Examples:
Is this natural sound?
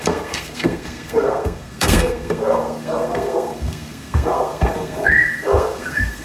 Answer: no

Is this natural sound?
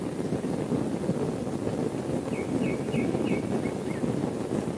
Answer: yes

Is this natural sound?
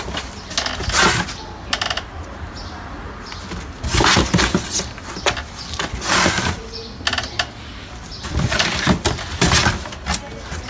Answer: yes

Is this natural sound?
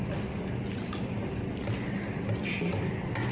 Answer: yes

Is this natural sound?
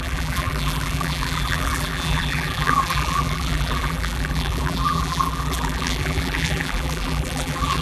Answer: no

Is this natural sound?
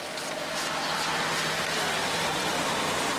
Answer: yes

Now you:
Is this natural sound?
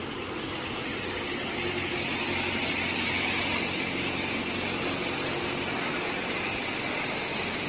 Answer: yes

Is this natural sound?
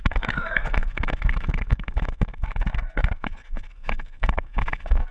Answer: no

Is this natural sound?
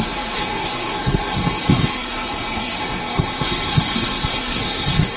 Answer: no